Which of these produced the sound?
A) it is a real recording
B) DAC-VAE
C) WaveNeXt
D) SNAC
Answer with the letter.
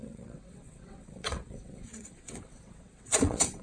C